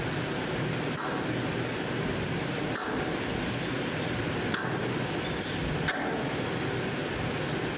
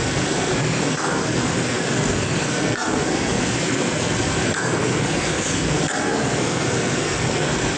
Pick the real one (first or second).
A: first